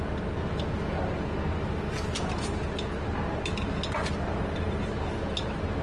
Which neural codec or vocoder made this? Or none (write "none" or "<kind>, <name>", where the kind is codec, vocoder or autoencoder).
none